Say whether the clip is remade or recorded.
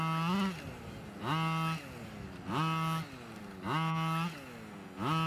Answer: recorded